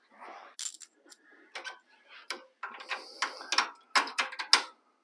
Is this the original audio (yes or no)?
yes